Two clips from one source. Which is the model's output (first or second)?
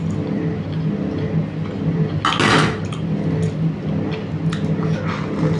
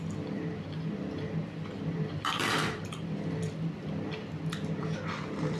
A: second